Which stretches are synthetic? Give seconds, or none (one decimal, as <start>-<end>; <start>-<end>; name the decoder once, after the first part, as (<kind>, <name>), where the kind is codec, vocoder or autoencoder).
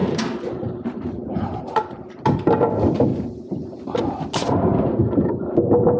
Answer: 0.0-2.1 (vocoder, BigVGAN v2); 3.1-3.8; 4.7-5.3